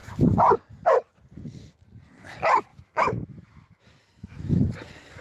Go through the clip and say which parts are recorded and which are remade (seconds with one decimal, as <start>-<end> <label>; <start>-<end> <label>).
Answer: 0.0-2.7 recorded; 2.7-4.7 remade; 4.7-5.2 recorded